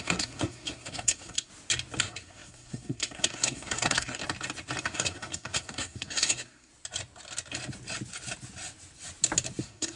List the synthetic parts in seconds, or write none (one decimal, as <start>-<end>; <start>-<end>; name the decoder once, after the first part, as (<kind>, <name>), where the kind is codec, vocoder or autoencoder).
0.0-1.5 (codec, SNAC); 2.0-4.2; 4.8-6.7; 9.6-10.0